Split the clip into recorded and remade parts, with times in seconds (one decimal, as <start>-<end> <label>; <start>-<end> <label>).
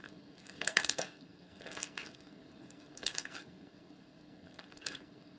0.0-5.4 remade